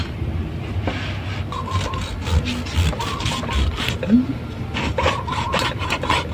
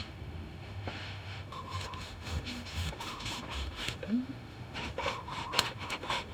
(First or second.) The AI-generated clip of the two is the second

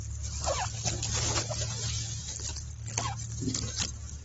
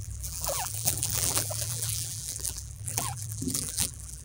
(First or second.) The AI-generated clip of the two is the second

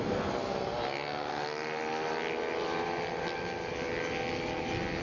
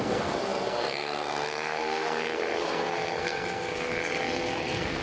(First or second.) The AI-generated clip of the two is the second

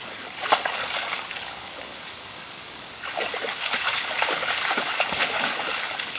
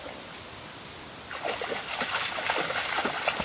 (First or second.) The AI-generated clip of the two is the first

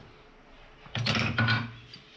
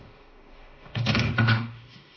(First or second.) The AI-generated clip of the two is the second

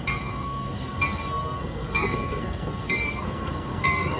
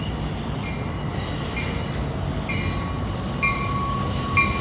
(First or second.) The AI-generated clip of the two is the first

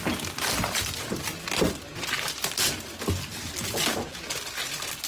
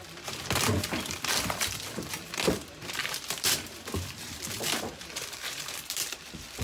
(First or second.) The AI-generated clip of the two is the second